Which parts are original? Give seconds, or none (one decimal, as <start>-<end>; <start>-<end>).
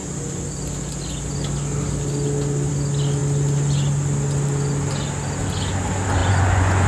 0.0-6.2